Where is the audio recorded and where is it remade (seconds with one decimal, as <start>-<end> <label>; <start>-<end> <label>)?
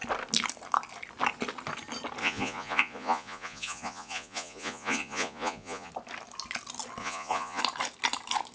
0.0-2.2 recorded; 2.2-5.9 remade; 5.9-7.0 recorded; 7.0-7.6 remade; 7.6-8.5 recorded